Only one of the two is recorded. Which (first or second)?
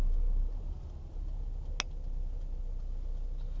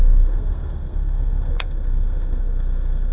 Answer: first